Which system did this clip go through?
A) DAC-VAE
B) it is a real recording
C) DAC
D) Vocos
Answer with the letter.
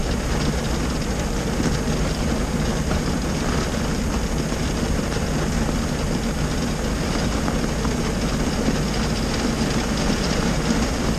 B